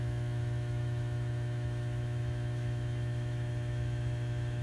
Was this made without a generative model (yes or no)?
no